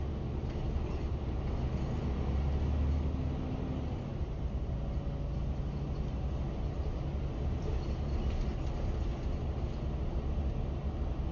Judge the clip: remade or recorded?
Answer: recorded